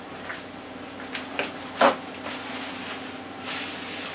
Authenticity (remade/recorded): recorded